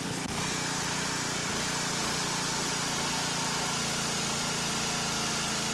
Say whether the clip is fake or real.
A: real